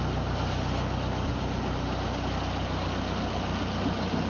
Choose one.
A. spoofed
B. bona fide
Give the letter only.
B